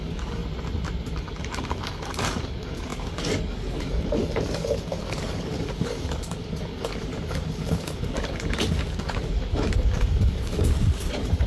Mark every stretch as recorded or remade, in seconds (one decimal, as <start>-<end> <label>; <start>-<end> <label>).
0.0-0.4 remade; 0.4-1.2 recorded; 1.2-11.5 remade